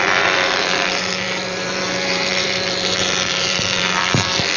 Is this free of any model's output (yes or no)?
no